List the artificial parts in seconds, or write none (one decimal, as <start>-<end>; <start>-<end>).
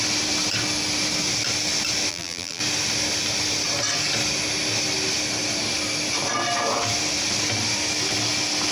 2.1-2.6